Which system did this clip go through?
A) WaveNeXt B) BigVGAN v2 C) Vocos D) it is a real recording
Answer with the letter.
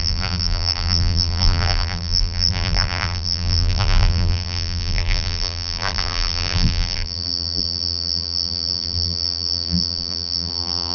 B